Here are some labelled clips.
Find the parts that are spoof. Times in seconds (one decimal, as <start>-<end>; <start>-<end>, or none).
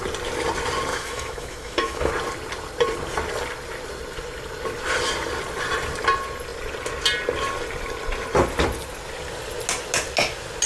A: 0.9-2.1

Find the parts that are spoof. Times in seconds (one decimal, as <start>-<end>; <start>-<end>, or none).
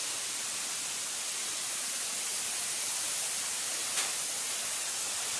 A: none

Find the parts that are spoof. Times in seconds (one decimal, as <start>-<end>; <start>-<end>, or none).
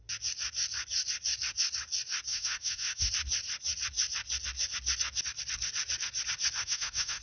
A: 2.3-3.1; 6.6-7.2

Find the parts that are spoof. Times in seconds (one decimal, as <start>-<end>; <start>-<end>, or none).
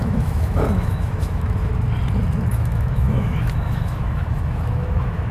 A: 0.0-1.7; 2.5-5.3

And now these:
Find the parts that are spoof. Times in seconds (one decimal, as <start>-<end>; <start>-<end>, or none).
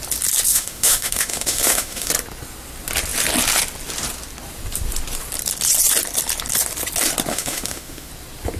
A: 0.5-2.1; 7.3-8.1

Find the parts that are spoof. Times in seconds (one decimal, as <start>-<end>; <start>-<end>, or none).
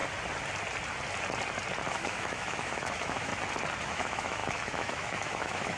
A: 1.9-3.3; 3.8-5.8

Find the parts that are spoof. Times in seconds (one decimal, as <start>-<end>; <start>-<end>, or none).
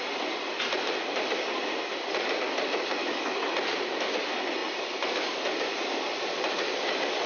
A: 3.0-3.5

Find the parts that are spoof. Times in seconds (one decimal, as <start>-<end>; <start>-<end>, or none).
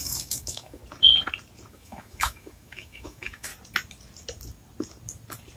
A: 0.0-0.8; 1.7-3.5